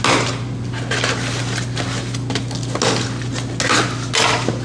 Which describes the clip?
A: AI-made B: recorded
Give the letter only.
B